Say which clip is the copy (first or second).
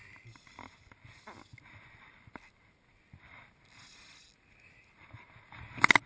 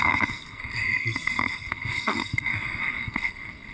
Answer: second